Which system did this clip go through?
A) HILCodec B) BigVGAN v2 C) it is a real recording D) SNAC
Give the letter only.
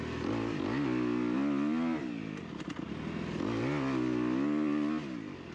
C